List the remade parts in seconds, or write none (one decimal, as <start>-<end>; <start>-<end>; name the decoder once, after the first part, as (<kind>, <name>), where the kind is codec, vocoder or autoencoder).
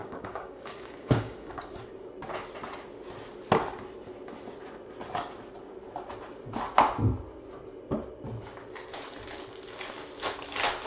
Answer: 0.0-1.5 (codec, DAC)